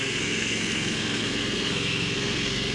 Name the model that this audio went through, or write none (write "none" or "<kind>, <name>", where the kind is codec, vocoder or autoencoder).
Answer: codec, SNAC